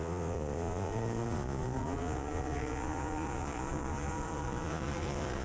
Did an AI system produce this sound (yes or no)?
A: yes